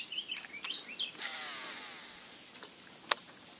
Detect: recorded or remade recorded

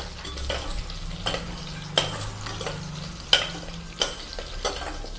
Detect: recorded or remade recorded